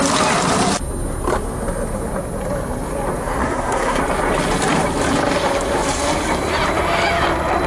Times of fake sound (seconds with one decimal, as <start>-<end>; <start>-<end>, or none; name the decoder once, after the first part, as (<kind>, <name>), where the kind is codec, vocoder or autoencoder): 3.4-4.0 (codec, SNAC)